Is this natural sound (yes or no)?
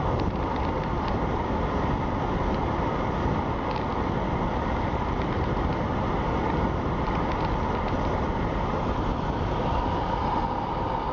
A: yes